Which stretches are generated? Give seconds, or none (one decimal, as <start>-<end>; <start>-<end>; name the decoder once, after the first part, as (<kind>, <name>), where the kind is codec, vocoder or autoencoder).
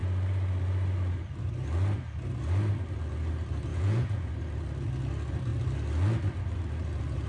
3.7-4.3 (vocoder, Vocos)